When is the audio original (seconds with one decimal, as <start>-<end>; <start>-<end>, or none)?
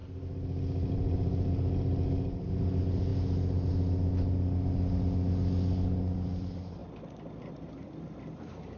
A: 0.0-3.1; 3.7-8.8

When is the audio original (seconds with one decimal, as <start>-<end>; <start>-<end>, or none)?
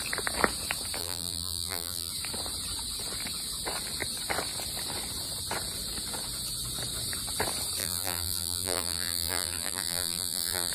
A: 0.0-1.0; 2.1-7.8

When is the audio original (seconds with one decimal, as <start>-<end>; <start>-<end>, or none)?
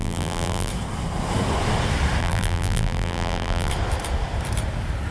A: 0.7-2.2; 3.7-5.1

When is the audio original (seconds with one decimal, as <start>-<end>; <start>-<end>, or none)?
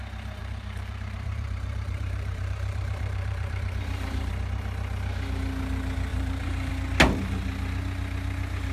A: 0.0-0.4; 4.3-6.1; 6.7-8.7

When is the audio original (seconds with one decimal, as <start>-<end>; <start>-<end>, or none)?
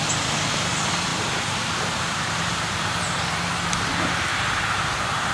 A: 0.0-1.1; 3.1-4.3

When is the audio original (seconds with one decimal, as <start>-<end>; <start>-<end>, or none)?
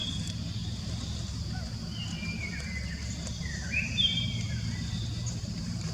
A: 0.8-2.4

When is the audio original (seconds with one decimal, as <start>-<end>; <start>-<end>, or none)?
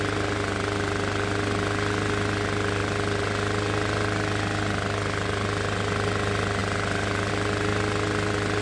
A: 0.0-8.6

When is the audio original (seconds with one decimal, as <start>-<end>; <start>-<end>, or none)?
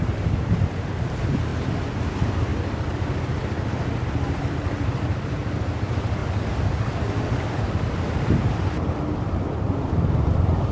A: 1.5-2.0; 2.5-4.1